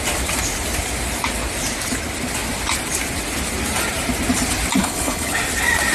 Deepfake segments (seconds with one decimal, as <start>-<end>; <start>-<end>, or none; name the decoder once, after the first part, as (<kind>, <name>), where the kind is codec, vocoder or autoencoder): 4.8-5.4 (codec, HILCodec)